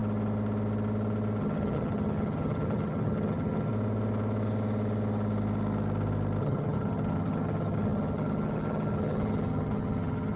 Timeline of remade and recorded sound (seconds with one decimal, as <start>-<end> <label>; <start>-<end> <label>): 0.0-1.4 recorded; 1.4-3.7 remade; 3.7-6.4 recorded; 6.4-10.4 remade